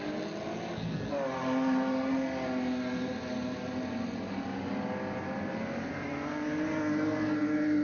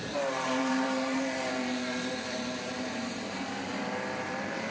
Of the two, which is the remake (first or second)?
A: second